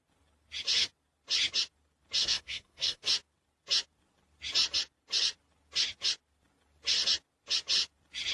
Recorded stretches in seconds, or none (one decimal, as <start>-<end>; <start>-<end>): 0.0-2.2; 3.1-8.3